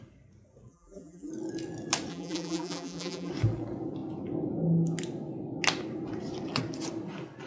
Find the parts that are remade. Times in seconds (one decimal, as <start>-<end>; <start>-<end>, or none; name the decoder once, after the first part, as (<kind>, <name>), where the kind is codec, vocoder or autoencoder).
0.7-1.3 (vocoder, BigVGAN v2); 2.1-3.3